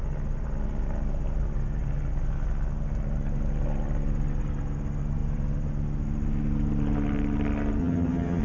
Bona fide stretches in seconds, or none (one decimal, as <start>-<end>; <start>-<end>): 0.0-7.8